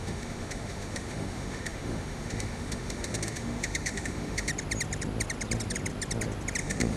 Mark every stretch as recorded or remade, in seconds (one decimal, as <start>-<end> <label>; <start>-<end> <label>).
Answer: 0.0-4.5 remade; 4.5-6.6 recorded; 6.6-7.0 remade